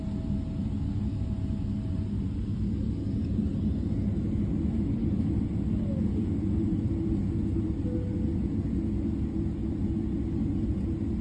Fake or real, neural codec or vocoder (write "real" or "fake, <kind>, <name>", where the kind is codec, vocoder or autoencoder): real